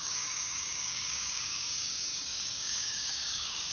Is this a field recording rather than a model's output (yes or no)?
no